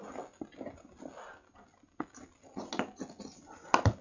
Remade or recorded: recorded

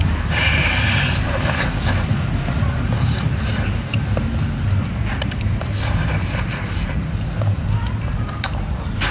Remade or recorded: remade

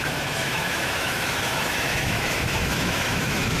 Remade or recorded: remade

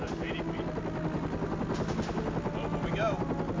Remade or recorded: recorded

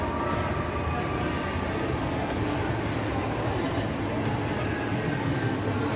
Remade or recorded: recorded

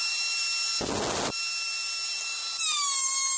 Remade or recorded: recorded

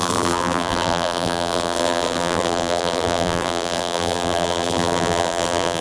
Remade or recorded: remade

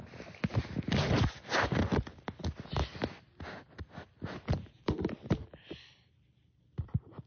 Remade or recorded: recorded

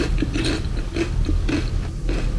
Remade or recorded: recorded